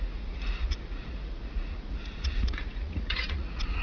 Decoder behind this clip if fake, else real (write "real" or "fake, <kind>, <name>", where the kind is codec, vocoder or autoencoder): fake, vocoder, Vocos